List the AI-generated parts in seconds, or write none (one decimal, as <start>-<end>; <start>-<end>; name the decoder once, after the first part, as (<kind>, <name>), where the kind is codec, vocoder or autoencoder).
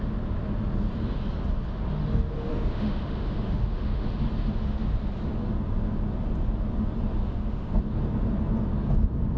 2.5-4.1 (autoencoder, DAC-VAE); 7.2-7.8